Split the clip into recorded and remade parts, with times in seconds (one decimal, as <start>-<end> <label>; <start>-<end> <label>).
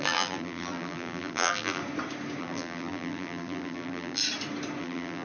0.0-1.8 remade; 1.8-2.4 recorded; 2.4-4.2 remade; 4.2-4.8 recorded; 4.8-5.2 remade